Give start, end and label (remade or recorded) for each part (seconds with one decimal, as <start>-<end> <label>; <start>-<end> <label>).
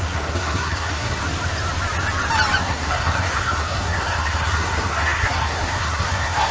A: 0.0-1.2 remade; 1.2-2.6 recorded; 2.6-6.5 remade